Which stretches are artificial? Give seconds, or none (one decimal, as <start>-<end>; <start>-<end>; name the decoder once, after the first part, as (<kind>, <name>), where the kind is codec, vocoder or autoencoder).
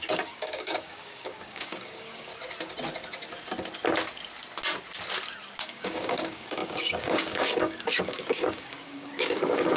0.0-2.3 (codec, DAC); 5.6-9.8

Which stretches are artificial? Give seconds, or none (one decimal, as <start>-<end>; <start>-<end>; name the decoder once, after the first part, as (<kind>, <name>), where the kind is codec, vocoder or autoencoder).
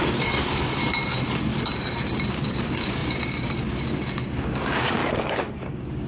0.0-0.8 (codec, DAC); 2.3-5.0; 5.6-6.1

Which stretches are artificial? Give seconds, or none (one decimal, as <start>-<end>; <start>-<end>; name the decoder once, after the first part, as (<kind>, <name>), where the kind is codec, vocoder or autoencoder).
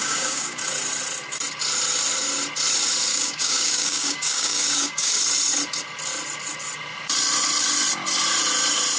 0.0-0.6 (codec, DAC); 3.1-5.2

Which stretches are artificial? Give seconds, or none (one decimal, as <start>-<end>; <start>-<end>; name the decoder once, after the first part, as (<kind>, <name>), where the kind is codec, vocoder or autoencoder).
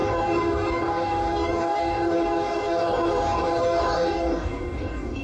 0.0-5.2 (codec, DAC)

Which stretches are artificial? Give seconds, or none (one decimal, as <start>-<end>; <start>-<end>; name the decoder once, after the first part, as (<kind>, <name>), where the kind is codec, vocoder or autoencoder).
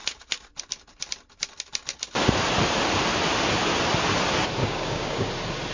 4.6-5.3 (codec, DAC)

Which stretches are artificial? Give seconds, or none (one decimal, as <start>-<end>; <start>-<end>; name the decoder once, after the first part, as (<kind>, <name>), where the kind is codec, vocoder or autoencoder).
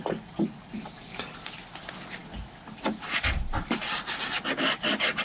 none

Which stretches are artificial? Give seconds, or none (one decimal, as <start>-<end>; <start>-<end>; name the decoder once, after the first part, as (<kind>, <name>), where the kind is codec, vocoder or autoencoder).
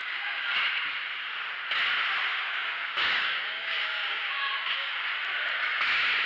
0.0-0.5 (codec, DAC); 2.3-4.9